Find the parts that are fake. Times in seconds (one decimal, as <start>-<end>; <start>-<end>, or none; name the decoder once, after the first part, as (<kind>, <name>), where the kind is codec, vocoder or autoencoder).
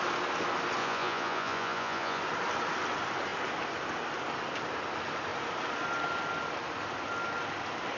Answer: 0.8-2.2 (vocoder, Vocos)